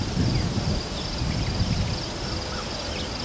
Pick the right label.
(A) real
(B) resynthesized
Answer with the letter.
A